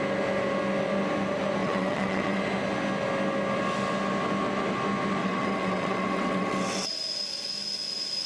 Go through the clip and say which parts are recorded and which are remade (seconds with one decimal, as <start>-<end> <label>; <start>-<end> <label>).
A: 0.0-1.6 recorded; 1.6-2.4 remade; 2.4-5.2 recorded; 5.2-7.0 remade; 7.0-8.3 recorded